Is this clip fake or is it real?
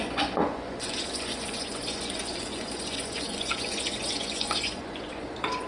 fake